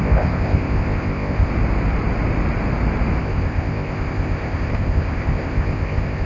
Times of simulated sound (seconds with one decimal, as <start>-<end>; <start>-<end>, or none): 0.0-1.5; 3.2-6.3